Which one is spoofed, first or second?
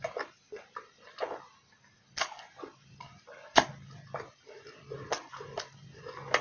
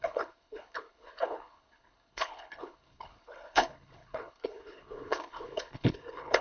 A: second